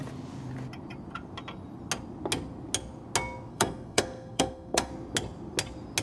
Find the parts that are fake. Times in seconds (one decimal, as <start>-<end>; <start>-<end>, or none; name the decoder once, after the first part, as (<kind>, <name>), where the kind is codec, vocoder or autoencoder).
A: 3.5-4.9 (codec, SNAC)